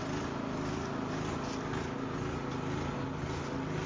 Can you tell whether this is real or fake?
real